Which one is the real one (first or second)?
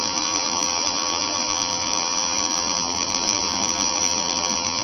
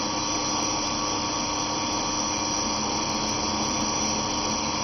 second